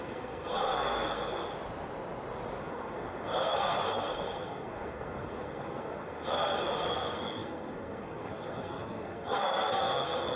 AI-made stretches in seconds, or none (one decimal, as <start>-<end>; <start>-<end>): 0.0-1.4; 2.6-10.4